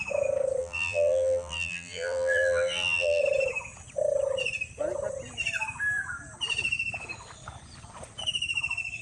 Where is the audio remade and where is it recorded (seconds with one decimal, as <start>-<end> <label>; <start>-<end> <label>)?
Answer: 0.0-0.6 recorded; 0.6-3.2 remade; 3.2-9.0 recorded